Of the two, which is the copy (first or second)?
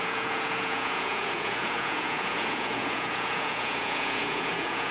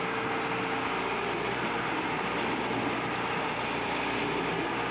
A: first